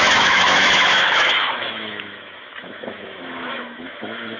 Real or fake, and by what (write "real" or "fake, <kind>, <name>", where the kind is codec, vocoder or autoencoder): fake, autoencoder, DAC-VAE